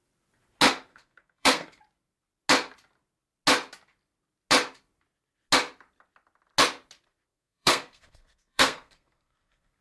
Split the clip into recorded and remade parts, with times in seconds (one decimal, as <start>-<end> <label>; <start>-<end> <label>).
0.0-0.9 recorded; 0.9-1.8 remade; 1.8-7.3 recorded; 7.3-9.8 remade

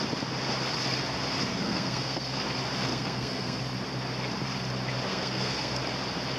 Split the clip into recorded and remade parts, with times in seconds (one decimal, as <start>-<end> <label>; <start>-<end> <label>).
0.0-1.5 recorded; 1.5-2.4 remade; 2.4-2.9 recorded; 2.9-3.6 remade; 3.6-5.1 recorded; 5.1-5.8 remade; 5.8-6.4 recorded

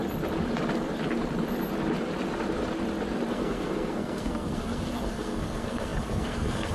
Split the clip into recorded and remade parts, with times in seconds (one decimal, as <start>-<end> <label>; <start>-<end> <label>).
0.0-3.3 recorded; 3.3-6.7 remade

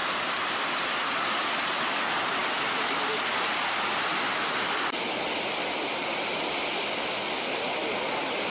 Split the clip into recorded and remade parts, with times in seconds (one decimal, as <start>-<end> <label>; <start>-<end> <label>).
0.0-8.5 recorded

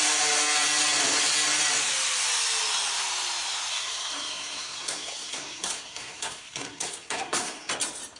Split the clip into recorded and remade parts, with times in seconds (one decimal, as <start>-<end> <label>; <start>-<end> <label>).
0.0-3.7 recorded; 3.7-7.7 remade; 7.7-8.2 recorded

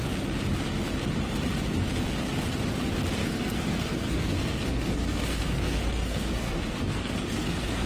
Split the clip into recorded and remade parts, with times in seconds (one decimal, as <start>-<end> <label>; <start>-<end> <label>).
0.0-3.2 recorded; 3.2-7.9 remade

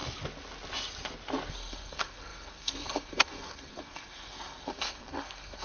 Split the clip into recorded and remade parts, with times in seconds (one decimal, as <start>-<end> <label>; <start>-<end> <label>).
0.0-1.5 recorded; 1.5-5.6 remade